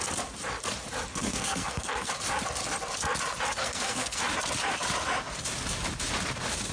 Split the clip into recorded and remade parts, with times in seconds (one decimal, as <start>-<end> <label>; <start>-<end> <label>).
0.0-1.1 recorded; 1.1-2.1 remade; 2.1-3.6 recorded; 3.6-4.2 remade; 4.2-6.7 recorded